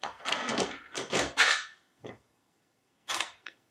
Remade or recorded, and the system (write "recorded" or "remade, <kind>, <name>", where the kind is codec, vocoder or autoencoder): remade, codec, SNAC